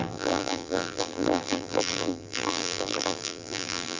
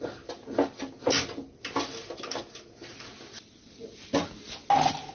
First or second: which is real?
second